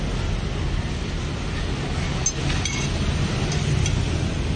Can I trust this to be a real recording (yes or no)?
yes